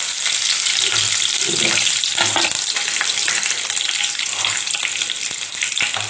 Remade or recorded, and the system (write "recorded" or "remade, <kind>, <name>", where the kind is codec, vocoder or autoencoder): recorded